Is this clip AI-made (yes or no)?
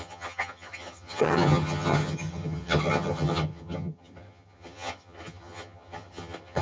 yes